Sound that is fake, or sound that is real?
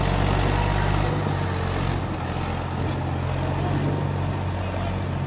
real